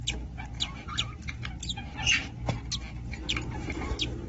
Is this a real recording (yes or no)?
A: yes